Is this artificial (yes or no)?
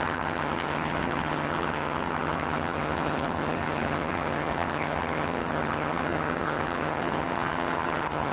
yes